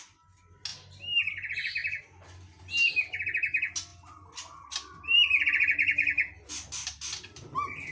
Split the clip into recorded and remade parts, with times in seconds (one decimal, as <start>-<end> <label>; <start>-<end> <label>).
0.0-1.8 recorded; 1.8-2.6 remade; 2.6-7.9 recorded